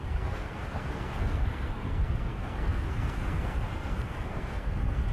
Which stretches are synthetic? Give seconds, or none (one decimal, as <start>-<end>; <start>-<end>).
0.0-5.1